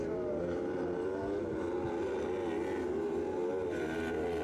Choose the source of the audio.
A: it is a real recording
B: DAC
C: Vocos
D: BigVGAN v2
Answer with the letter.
A